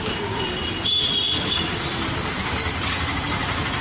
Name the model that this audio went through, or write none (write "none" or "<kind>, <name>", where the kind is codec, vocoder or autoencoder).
vocoder, BigVGAN v2